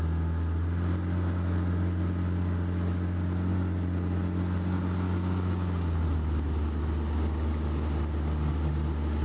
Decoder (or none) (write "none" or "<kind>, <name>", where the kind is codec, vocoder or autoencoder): none